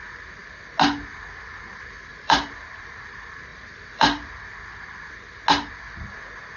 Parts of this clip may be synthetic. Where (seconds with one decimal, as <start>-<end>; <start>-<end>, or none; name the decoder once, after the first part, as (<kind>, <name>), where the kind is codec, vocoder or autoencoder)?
2.1-2.8 (vocoder, BigVGAN v2); 3.5-4.3